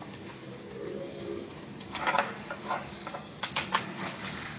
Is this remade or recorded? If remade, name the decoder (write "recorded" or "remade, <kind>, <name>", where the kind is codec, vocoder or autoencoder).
remade, codec, DAC